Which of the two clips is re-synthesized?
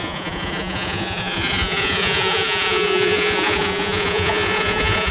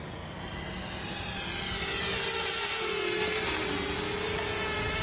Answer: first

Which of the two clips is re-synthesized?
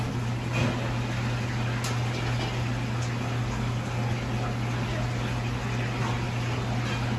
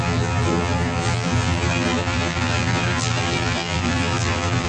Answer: second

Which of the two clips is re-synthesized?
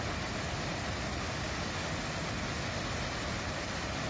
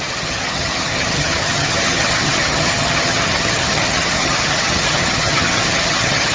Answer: second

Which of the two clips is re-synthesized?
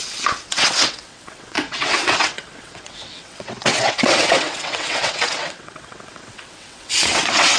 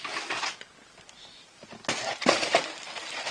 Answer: first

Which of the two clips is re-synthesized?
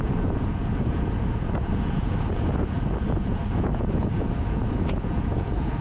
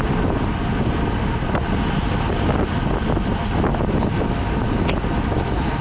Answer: first